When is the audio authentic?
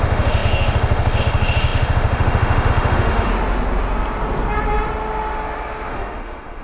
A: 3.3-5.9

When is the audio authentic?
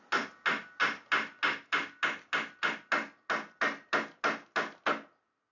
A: 0.0-5.5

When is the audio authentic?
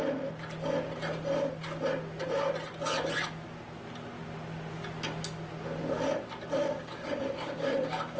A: 0.0-6.6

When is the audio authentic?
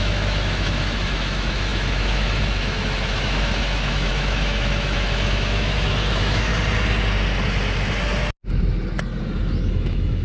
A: 6.5-9.7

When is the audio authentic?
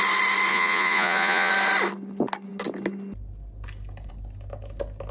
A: 0.0-0.5; 1.5-5.1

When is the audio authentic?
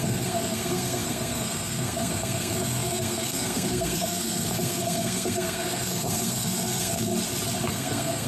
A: 7.1-7.7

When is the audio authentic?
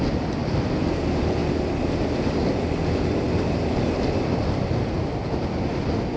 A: 0.0-0.4; 1.0-6.2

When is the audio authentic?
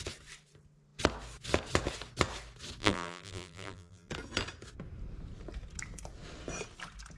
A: 0.0-2.8; 4.1-7.2